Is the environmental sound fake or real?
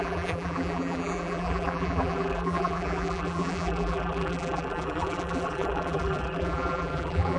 fake